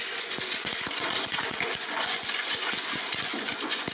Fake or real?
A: fake